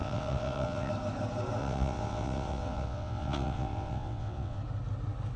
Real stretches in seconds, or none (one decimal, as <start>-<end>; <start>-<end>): 0.9-1.6; 4.6-5.4